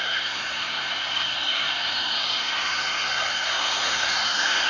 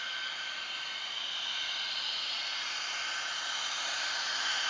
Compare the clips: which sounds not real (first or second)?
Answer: first